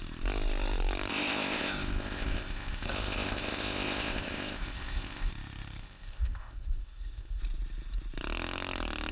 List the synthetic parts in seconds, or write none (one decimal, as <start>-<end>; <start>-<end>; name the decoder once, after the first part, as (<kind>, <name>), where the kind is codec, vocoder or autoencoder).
1.1-5.3 (codec, ZipCodec); 5.8-7.4